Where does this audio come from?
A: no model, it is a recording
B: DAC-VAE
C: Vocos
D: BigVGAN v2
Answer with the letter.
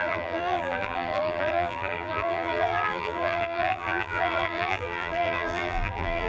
D